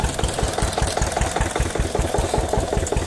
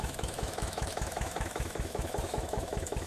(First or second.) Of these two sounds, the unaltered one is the first